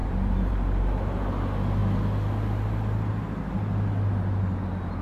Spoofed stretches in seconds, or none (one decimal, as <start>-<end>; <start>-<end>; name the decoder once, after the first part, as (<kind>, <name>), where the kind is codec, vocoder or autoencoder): 0.0-0.5 (vocoder, BigVGAN v2)